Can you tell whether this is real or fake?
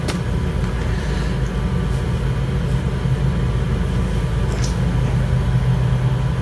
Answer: real